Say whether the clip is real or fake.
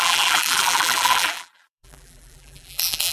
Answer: fake